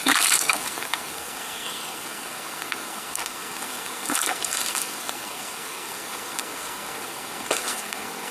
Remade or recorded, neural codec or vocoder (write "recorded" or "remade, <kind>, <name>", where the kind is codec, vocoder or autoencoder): remade, codec, SNAC